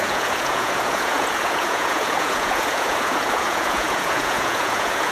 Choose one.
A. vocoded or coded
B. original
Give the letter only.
A